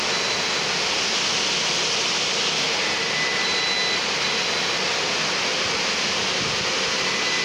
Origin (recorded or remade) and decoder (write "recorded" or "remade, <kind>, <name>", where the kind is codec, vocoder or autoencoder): recorded